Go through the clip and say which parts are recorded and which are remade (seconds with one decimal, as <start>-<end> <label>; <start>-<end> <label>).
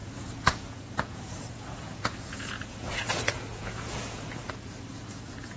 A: 0.0-4.4 remade; 4.4-4.9 recorded; 4.9-5.6 remade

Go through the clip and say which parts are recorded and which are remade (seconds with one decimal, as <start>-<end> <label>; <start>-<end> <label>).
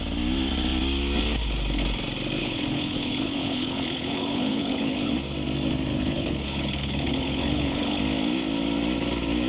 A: 0.0-2.4 recorded; 2.4-5.1 remade; 5.1-5.9 recorded; 5.9-8.0 remade; 8.0-9.5 recorded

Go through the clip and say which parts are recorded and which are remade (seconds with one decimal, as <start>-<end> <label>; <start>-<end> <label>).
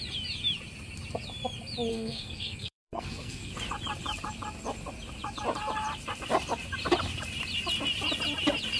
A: 0.0-1.9 recorded; 1.9-3.5 remade; 3.5-8.8 recorded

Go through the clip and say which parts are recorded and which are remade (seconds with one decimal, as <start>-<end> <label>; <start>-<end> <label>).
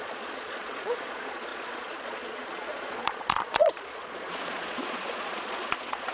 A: 0.0-6.1 remade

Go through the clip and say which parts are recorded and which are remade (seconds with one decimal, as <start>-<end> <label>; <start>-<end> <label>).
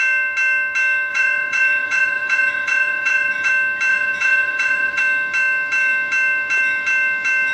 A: 0.0-1.1 recorded; 1.1-3.5 remade; 3.5-3.9 recorded; 3.9-5.0 remade; 5.0-7.5 recorded